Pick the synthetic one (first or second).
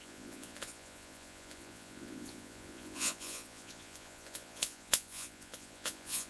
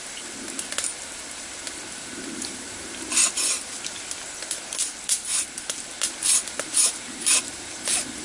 first